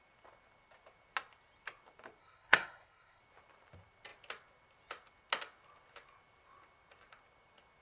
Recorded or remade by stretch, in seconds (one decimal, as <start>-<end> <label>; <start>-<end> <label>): 0.0-2.2 recorded; 2.2-3.2 remade; 3.2-7.8 recorded